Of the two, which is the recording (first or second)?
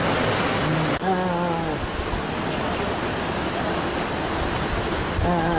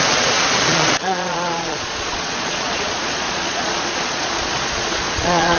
first